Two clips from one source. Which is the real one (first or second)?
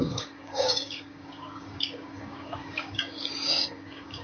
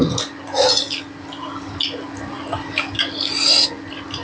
second